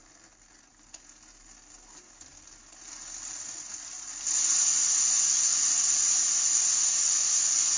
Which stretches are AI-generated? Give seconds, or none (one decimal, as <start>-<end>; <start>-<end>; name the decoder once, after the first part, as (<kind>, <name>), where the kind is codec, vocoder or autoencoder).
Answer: none